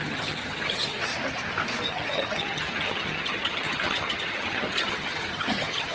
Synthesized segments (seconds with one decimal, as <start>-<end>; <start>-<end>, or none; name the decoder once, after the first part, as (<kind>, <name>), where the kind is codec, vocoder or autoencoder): 0.0-1.1 (vocoder, HiFi-GAN); 1.9-5.9